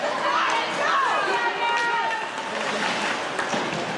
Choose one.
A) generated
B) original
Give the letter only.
B